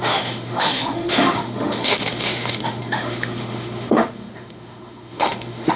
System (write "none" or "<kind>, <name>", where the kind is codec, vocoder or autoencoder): autoencoder, DAC-VAE